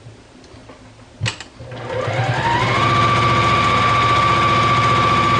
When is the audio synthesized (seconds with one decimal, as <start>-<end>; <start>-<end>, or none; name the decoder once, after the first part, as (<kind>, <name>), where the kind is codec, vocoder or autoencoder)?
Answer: none